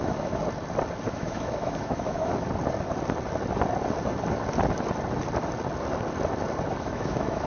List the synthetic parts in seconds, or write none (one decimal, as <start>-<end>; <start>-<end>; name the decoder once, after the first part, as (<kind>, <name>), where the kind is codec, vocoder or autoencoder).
0.0-0.4 (autoencoder, DAC-VAE); 1.1-2.3; 6.8-7.5